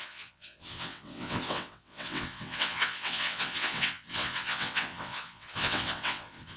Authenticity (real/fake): fake